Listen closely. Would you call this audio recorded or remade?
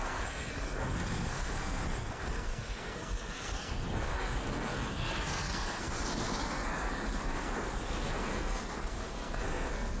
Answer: remade